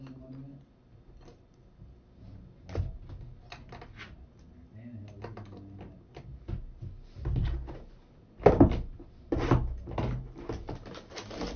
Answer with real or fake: real